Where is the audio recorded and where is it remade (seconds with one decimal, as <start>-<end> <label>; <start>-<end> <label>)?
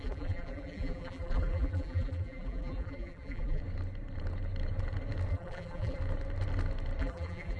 0.0-3.6 remade; 3.6-5.3 recorded; 5.3-6.0 remade; 6.0-7.0 recorded; 7.0-7.6 remade